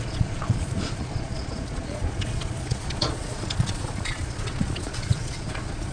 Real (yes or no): no